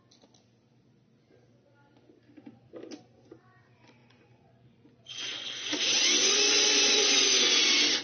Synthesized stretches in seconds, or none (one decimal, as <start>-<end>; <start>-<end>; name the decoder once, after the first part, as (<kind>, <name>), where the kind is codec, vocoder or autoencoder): 4.0-5.8 (vocoder, Vocos); 6.2-7.6